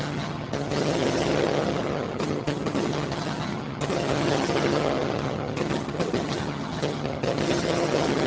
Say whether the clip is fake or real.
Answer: fake